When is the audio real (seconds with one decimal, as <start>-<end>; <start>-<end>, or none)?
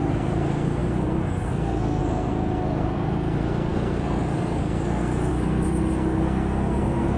none